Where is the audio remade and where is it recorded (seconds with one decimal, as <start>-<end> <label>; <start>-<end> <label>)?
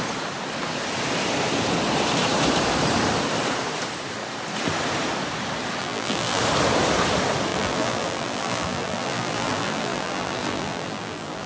0.0-5.8 recorded; 5.8-6.4 remade; 6.4-7.5 recorded; 7.5-11.5 remade